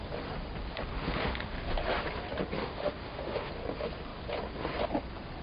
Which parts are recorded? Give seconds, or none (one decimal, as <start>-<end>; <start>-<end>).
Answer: 0.0-0.9; 1.7-2.6; 3.5-5.4